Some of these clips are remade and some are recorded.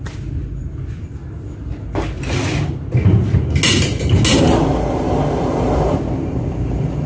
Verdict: recorded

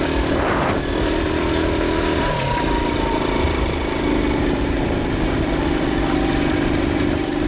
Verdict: remade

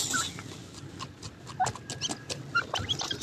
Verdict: recorded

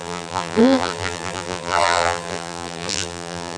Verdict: remade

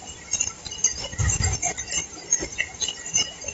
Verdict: recorded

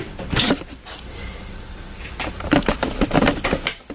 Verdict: recorded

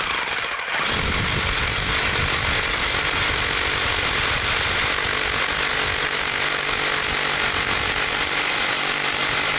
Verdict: recorded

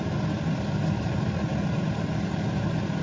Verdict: remade